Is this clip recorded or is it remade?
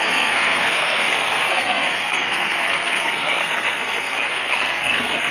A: remade